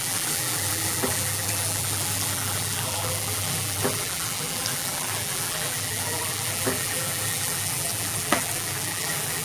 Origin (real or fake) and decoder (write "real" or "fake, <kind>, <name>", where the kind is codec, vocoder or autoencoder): fake, vocoder, BigVGAN v2